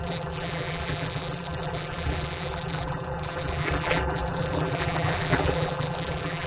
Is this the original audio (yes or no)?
no